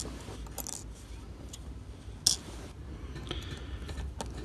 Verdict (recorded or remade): recorded